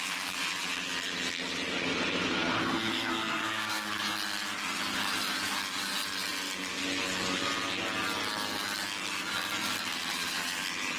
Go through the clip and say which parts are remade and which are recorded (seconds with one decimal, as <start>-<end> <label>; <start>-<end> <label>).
0.0-2.6 recorded; 2.6-4.0 remade; 4.0-11.0 recorded